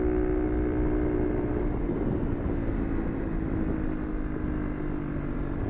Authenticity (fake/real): real